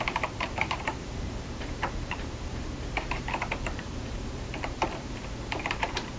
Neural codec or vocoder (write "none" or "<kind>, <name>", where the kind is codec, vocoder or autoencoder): vocoder, BigVGAN v2